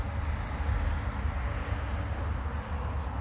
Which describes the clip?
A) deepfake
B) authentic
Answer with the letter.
B